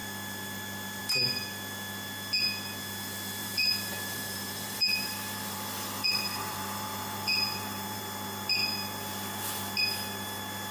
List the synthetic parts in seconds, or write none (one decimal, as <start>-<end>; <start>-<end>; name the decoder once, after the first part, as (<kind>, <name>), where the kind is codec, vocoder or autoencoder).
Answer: 3.4-8.0 (vocoder, BigVGAN v2)